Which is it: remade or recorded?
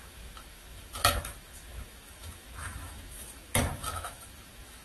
remade